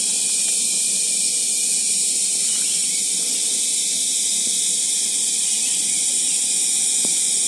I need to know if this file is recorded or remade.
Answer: remade